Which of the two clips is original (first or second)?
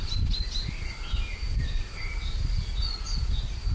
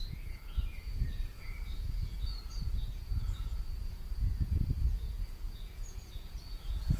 first